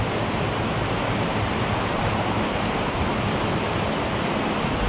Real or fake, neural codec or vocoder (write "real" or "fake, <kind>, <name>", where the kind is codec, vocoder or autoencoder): real